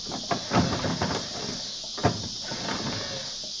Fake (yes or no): no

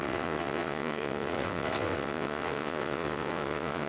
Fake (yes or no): yes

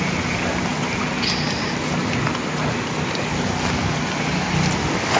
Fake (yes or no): no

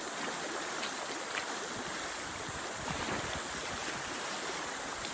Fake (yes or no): no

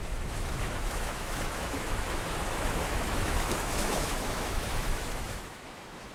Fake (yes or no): yes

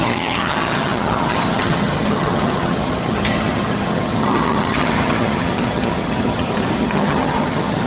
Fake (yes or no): yes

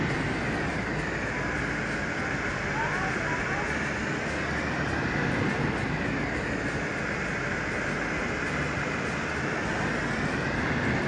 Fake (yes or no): no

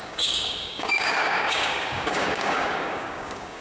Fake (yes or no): yes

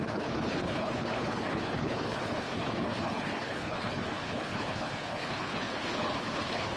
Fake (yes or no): yes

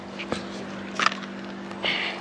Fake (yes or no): no